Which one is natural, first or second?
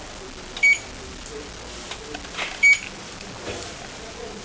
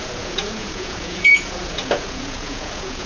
first